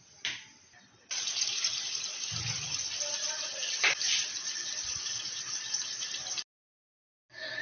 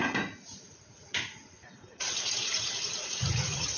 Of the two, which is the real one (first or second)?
first